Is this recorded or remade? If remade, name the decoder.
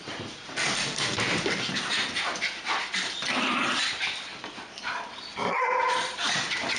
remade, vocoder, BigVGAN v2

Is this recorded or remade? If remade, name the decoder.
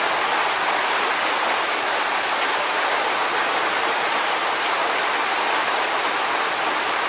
recorded